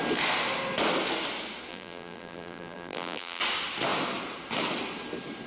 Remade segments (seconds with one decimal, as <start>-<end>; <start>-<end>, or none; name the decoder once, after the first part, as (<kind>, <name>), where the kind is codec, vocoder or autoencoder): 1.7-3.4 (vocoder, BigVGAN v2)

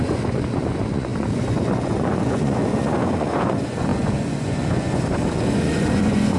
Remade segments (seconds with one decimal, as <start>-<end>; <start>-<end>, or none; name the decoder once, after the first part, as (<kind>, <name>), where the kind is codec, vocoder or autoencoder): 0.0-6.4 (vocoder, Vocos)

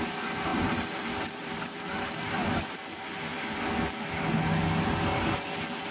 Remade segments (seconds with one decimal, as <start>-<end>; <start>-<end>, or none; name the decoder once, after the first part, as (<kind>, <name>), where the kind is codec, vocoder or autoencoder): 0.5-1.9 (vocoder, BigVGAN v2)

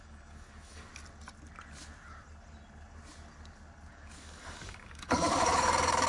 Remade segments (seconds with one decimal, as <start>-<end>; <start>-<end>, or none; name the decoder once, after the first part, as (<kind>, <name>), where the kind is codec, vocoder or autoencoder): 0.0-0.9 (codec, DAC); 3.9-6.1

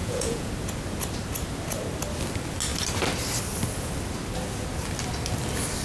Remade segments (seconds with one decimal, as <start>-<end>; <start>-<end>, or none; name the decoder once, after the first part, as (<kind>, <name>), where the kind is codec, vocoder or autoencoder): 0.0-0.5 (vocoder, Vocos)

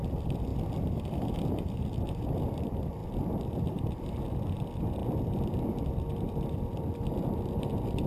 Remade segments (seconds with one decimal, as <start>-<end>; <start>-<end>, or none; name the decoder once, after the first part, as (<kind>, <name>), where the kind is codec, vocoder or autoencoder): 0.0-5.0 (vocoder, BigVGAN v2); 6.2-8.1

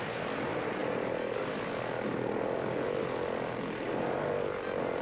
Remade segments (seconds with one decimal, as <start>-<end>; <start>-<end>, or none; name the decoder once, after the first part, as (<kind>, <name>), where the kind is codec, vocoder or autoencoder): none